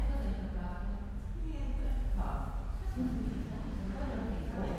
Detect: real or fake real